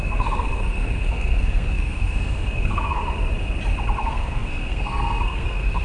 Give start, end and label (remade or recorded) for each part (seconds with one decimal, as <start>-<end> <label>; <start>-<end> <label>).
0.0-3.0 remade; 3.0-4.0 recorded; 4.0-5.8 remade